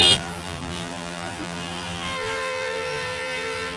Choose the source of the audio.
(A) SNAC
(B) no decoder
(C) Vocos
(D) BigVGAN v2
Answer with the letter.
D